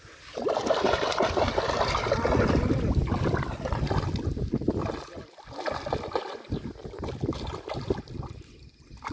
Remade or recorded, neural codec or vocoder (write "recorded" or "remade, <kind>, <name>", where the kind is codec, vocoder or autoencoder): recorded